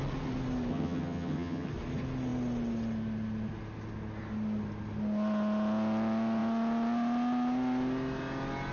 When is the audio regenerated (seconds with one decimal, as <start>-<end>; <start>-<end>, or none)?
0.7-1.7